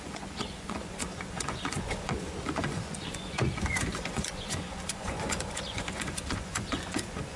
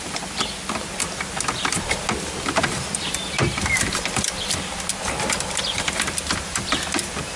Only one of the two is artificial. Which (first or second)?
first